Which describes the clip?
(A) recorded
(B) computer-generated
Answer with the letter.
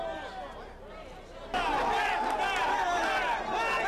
A